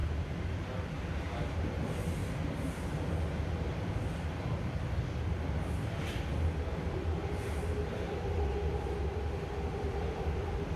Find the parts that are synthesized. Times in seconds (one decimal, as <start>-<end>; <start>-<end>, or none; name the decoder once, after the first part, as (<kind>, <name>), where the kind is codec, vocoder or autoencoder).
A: 9.7-10.4 (vocoder, BigVGAN v2)